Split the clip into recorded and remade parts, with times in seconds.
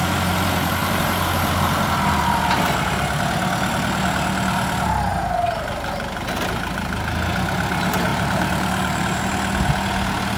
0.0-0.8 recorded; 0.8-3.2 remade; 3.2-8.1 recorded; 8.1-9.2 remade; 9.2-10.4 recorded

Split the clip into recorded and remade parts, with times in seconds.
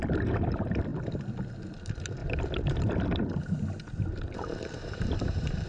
0.0-2.2 remade; 2.2-2.9 recorded; 2.9-5.7 remade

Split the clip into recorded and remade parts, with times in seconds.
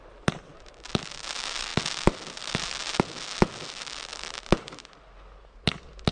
0.0-6.1 recorded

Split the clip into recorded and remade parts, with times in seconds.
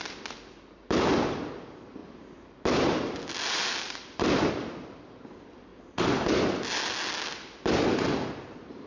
0.0-5.7 recorded; 5.7-6.4 remade; 6.4-8.9 recorded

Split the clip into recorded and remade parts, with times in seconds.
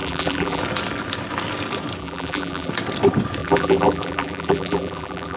0.0-0.6 remade; 0.6-2.0 recorded; 2.0-2.7 remade; 2.7-3.4 recorded; 3.4-5.4 remade